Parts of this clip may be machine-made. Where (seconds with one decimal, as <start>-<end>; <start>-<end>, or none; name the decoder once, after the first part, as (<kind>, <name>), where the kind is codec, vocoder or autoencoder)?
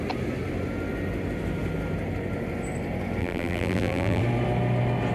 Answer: 3.2-4.2 (vocoder, BigVGAN v2)